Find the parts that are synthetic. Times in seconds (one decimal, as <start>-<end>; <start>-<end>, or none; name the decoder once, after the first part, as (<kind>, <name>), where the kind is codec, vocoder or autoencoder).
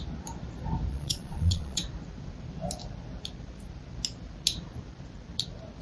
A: 0.9-1.8 (vocoder, Vocos)